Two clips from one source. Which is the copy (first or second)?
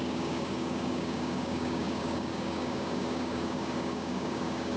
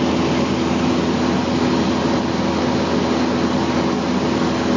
first